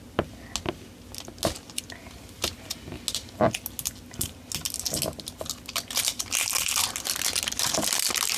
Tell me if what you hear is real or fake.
real